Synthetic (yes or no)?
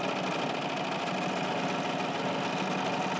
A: no